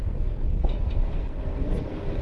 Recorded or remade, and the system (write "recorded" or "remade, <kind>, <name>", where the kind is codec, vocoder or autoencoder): remade, codec, SNAC